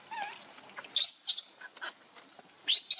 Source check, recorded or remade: recorded